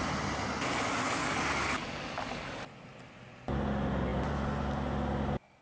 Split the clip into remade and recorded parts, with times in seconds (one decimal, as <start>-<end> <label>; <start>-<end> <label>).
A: 0.0-1.2 recorded; 1.2-2.5 remade; 2.5-5.6 recorded